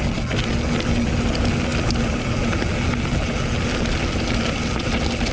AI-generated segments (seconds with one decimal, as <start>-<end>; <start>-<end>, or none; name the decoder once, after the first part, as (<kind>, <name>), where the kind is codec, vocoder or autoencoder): none